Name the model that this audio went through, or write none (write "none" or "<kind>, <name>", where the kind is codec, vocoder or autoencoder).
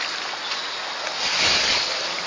none